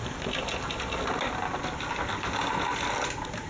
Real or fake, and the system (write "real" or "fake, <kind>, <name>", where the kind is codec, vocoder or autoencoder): real